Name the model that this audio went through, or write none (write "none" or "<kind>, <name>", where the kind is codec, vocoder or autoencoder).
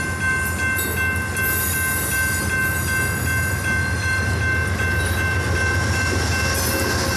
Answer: none